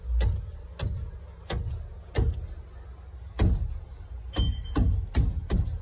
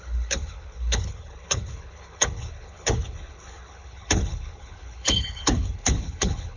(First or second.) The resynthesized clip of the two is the second